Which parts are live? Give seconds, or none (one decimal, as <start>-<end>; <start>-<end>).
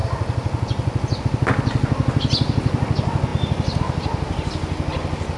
0.0-5.4